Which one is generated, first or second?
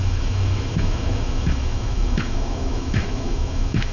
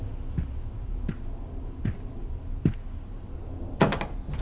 first